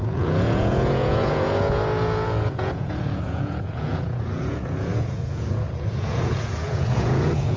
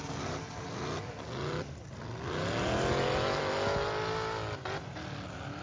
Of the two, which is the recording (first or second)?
second